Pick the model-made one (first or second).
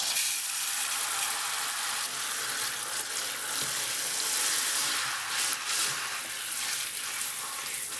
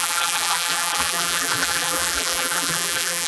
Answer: second